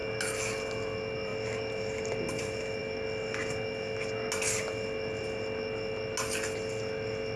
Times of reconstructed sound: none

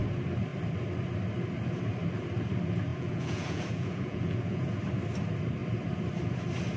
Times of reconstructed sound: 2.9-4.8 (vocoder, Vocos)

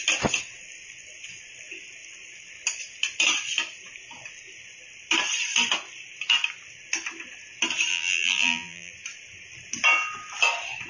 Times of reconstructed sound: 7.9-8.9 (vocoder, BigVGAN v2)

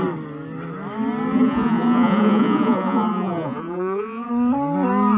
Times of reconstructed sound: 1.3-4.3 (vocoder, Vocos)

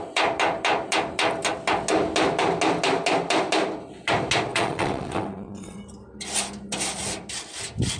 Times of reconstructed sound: 4.5-5.8 (vocoder, WaveNeXt)

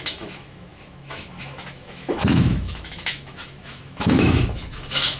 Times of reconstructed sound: 0.0-5.2 (autoencoder, DAC-VAE)